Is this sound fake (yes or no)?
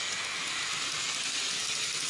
no